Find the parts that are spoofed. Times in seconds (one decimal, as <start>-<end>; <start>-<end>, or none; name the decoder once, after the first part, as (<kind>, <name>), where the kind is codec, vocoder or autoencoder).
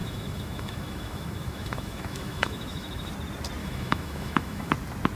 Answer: 0.0-3.1 (autoencoder, DAC-VAE); 3.6-4.7